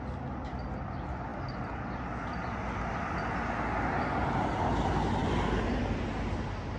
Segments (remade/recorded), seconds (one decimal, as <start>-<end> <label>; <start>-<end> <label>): 0.0-6.8 recorded